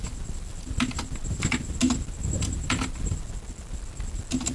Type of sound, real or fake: real